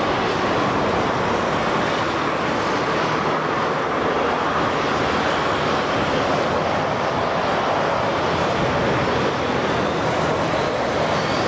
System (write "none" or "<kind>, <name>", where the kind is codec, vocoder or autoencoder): none